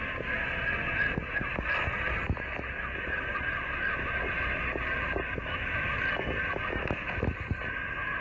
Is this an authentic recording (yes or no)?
yes